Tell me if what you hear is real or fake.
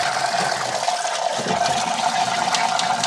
real